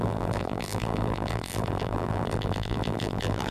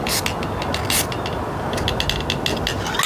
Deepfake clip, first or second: first